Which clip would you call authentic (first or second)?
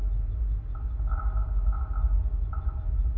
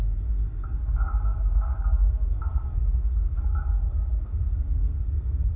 first